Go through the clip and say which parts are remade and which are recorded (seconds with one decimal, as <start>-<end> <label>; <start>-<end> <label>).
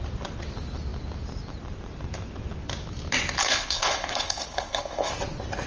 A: 0.0-3.4 recorded; 3.4-5.1 remade; 5.1-5.7 recorded